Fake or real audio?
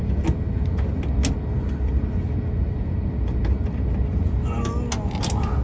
real